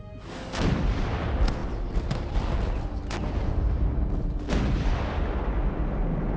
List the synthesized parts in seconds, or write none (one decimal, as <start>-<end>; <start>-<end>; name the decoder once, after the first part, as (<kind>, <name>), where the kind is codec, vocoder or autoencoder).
none